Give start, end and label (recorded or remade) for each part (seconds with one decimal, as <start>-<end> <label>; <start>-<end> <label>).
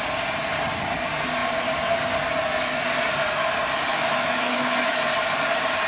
0.0-3.9 recorded; 3.9-5.0 remade; 5.0-5.9 recorded